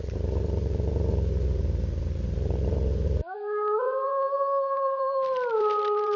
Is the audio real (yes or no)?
no